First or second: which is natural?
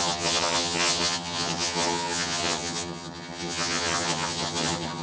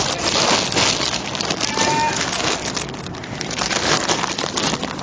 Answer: second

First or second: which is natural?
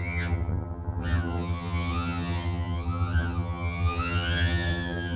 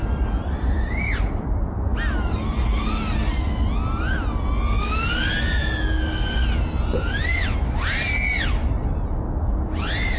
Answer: second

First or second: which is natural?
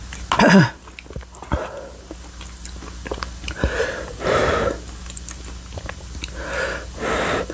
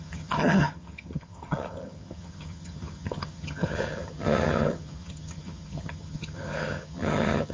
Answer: first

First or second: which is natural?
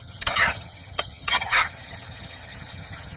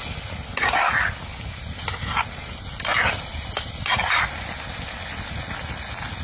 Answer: second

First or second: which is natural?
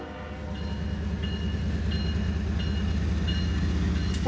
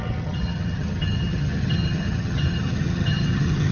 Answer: first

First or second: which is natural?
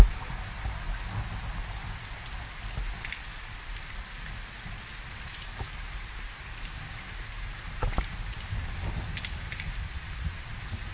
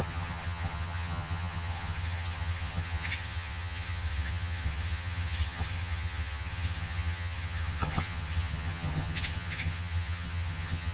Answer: first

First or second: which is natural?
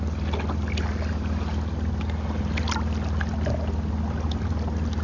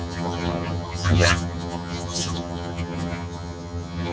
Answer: first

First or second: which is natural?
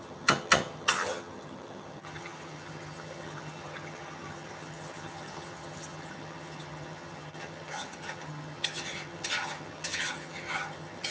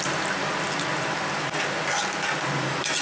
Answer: second